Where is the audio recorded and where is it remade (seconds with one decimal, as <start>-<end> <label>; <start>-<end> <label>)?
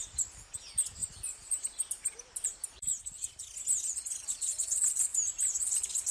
0.0-1.0 recorded; 1.0-3.0 remade; 3.0-5.1 recorded; 5.1-6.1 remade